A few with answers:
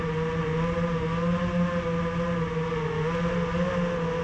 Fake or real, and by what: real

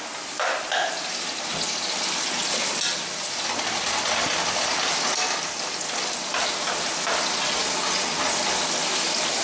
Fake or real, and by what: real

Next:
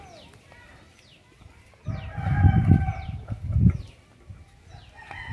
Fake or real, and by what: real